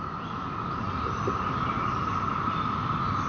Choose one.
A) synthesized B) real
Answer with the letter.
B